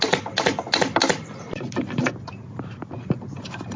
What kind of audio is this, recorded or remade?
recorded